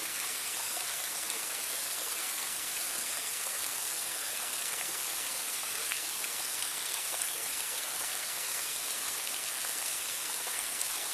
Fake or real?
fake